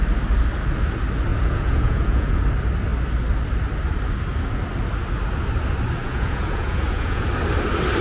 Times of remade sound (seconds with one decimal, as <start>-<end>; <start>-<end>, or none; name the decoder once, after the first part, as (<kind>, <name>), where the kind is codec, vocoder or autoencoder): 1.3-2.4 (vocoder, Vocos); 6.0-7.3

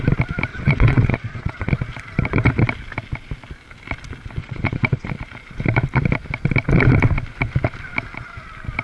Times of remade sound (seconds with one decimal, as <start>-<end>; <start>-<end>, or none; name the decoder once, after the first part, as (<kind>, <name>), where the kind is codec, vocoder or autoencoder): 0.5-1.7 (vocoder, Vocos); 4.4-5.1

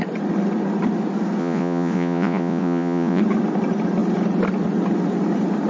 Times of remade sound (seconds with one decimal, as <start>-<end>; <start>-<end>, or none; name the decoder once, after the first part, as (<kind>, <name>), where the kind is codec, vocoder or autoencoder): 1.4-3.2 (vocoder, Vocos)

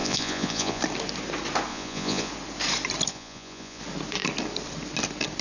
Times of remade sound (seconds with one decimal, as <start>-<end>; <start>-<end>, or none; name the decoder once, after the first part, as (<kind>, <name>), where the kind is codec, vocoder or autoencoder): 0.0-0.8 (vocoder, Vocos); 1.7-2.3; 3.1-3.8

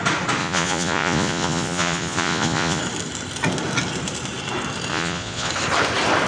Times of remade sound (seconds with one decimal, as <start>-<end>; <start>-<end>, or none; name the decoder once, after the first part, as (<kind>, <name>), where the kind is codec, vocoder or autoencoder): 0.4-2.8 (vocoder, Vocos); 4.9-5.5

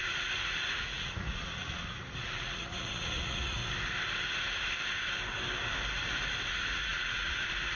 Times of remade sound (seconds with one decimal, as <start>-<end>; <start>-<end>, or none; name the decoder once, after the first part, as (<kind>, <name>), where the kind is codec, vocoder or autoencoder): 0.0-3.6 (vocoder, Vocos); 6.5-7.8

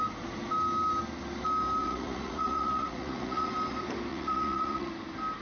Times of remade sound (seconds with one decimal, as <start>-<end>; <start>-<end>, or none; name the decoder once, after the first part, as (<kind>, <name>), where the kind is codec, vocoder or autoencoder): 1.8-3.5 (vocoder, Vocos); 4.1-4.9

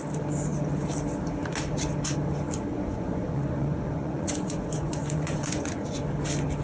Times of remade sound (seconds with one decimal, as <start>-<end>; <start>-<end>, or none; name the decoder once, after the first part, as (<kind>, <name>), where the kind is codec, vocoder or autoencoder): 2.7-6.0 (vocoder, Vocos)